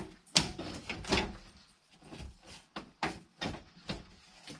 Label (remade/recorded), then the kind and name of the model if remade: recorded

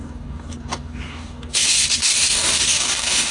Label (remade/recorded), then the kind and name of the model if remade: remade, codec, DAC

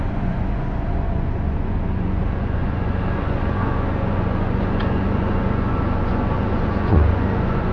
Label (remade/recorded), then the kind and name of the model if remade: remade, vocoder, Vocos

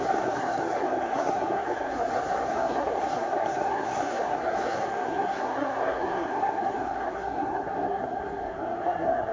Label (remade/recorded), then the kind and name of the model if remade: remade, codec, SNAC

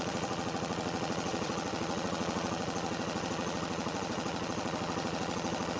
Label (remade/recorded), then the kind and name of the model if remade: remade, vocoder, Vocos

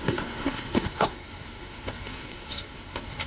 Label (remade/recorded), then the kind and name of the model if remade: remade, codec, SNAC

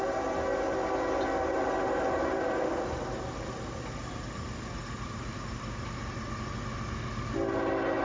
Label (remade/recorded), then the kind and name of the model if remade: recorded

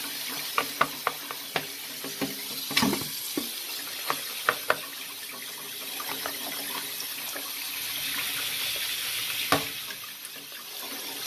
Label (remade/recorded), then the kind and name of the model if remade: recorded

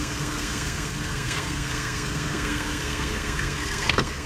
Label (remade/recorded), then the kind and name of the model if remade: remade, codec, SNAC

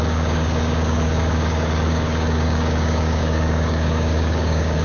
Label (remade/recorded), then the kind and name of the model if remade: remade, codec, DAC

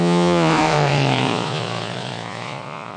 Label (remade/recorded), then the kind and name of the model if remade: remade, vocoder, Vocos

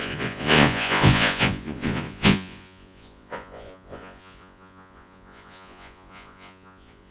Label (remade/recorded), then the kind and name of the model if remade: remade, vocoder, Vocos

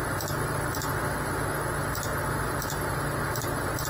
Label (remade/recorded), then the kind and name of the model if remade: recorded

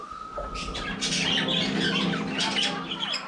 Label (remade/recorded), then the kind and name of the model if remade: recorded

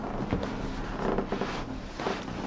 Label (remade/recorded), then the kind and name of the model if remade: recorded